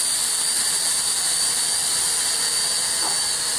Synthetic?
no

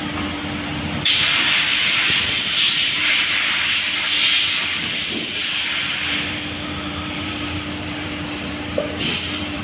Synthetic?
yes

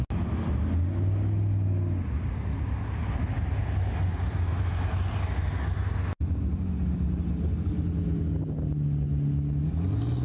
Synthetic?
no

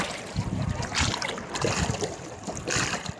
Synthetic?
yes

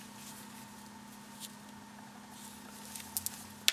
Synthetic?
no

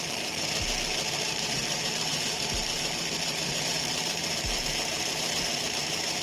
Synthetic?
yes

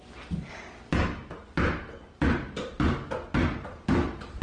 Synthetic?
no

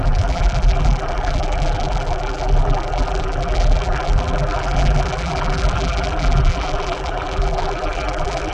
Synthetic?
yes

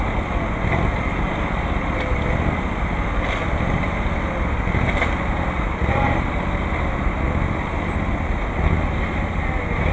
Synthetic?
no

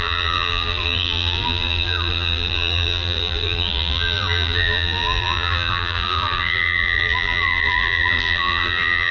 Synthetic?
yes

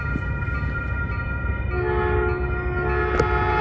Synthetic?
no